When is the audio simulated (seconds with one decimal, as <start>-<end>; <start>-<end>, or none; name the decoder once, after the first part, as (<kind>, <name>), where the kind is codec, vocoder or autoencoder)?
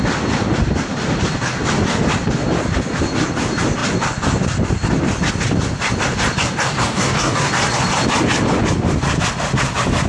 6.7-7.5 (codec, DAC)